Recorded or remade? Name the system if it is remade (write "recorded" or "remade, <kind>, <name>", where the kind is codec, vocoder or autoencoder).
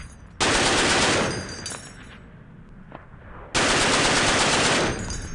recorded